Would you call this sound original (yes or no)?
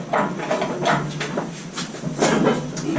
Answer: yes